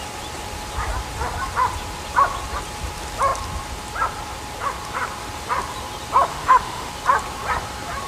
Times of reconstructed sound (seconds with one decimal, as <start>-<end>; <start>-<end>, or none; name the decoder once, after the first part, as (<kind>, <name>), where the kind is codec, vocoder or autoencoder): 6.3-6.9 (autoencoder, DAC-VAE)

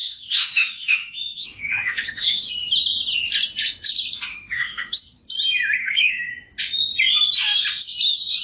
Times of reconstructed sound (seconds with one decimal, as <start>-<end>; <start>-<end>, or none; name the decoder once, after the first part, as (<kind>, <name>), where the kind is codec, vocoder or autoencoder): 0.0-2.5 (autoencoder, DAC-VAE); 4.3-5.2; 5.8-6.3

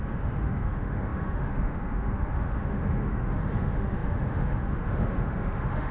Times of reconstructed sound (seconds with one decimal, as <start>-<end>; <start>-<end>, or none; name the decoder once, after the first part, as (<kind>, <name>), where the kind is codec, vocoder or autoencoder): 0.0-5.9 (autoencoder, DAC-VAE)

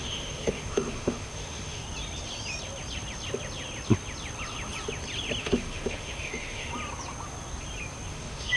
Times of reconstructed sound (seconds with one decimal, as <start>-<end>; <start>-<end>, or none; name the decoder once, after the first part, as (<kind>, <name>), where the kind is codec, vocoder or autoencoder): 0.0-1.8 (autoencoder, DAC-VAE); 5.4-6.7; 8.1-8.6